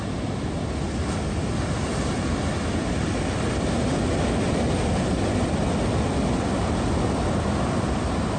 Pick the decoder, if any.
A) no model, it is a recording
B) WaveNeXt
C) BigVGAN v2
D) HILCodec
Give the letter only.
A